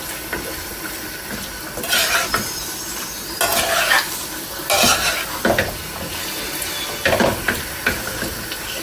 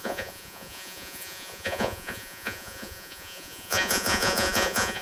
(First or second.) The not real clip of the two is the second